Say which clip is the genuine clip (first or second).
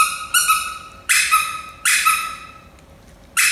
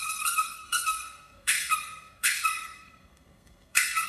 first